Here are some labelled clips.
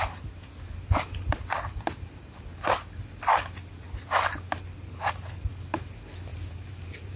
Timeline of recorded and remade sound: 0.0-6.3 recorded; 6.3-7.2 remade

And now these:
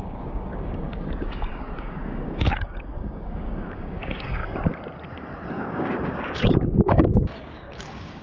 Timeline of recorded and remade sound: 0.0-4.4 remade; 4.4-5.5 recorded; 5.5-8.2 remade

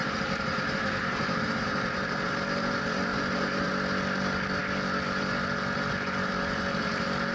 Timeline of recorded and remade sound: 0.0-3.7 remade; 3.7-7.3 recorded

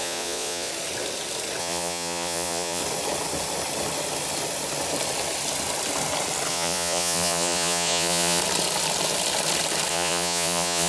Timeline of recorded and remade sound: 0.0-0.7 remade; 0.7-1.6 recorded; 1.6-2.8 remade; 2.8-6.5 recorded; 6.5-8.4 remade; 8.4-9.9 recorded; 9.9-10.9 remade

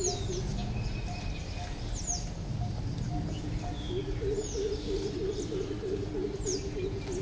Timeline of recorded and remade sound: 0.0-7.2 recorded